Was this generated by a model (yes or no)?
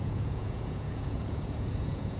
yes